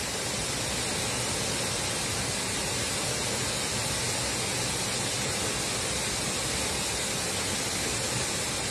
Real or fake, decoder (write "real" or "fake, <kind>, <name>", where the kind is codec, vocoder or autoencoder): real